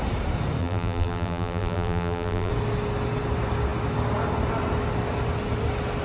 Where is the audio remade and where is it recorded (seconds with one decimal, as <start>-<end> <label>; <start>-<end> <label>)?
0.0-0.6 recorded; 0.6-2.5 remade; 2.5-6.0 recorded